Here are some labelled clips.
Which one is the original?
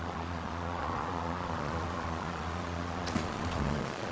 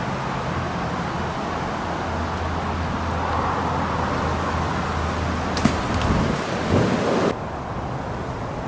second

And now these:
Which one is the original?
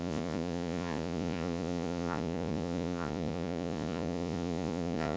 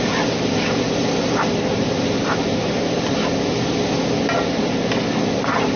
second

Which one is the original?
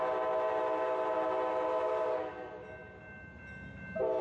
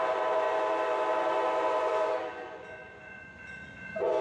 first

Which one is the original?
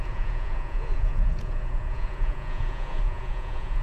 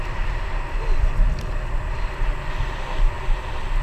second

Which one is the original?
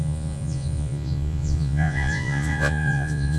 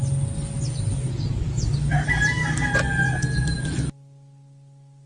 second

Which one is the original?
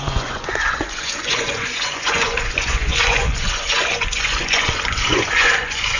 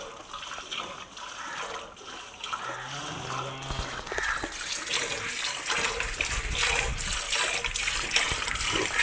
second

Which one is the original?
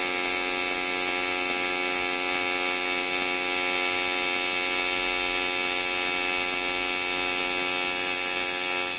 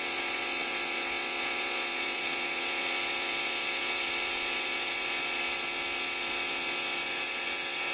first